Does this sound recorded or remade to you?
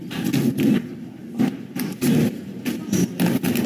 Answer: recorded